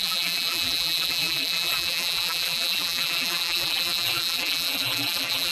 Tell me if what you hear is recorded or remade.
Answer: remade